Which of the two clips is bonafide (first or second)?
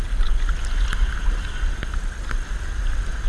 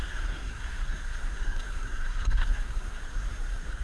first